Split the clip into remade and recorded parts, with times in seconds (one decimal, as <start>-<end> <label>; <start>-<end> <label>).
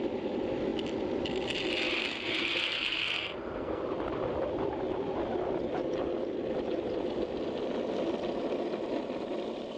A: 0.0-2.0 recorded; 2.0-3.8 remade; 3.8-9.8 recorded